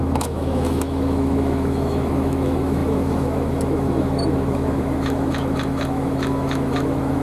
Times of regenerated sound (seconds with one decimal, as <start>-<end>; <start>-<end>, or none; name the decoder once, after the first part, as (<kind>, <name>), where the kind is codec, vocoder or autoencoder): 0.0-7.2 (autoencoder, DAC-VAE)